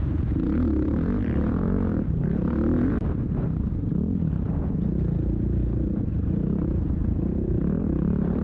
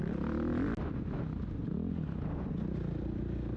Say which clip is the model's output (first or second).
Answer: first